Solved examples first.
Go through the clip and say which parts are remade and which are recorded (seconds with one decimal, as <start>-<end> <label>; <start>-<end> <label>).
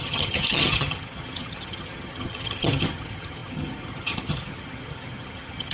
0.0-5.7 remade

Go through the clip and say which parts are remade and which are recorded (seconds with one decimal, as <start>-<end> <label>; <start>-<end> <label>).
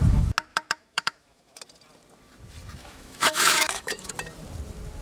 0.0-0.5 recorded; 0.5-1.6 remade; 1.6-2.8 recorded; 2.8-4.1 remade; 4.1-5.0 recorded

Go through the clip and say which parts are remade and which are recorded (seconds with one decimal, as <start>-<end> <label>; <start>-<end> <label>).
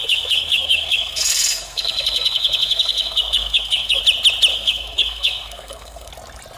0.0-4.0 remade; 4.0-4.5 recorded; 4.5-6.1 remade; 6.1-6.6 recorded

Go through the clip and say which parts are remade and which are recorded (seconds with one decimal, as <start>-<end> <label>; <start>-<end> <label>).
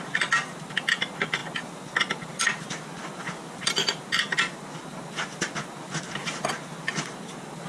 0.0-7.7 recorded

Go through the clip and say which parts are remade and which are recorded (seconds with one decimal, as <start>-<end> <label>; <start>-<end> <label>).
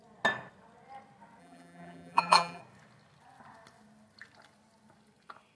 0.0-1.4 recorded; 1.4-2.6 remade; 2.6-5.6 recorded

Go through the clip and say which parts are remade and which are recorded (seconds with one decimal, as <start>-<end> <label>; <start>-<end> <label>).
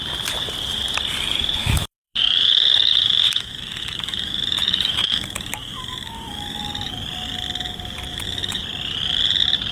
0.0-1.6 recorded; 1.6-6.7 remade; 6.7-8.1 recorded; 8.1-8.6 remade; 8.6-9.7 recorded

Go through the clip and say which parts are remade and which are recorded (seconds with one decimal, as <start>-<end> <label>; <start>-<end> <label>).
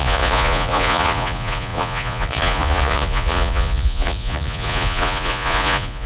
0.0-6.1 remade